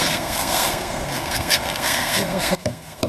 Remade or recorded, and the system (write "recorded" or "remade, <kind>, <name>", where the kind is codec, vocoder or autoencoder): remade, codec, SNAC